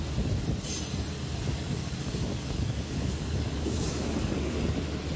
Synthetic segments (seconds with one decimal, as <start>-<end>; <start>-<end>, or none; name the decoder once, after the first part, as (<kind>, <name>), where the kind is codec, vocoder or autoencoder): 1.5-4.6 (codec, DAC)